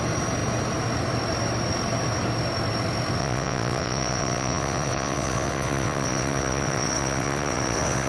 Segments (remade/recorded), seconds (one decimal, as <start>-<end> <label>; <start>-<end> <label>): 0.0-3.2 recorded; 3.2-8.1 remade